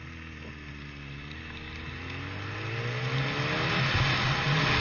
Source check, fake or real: real